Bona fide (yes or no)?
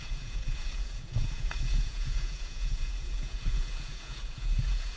no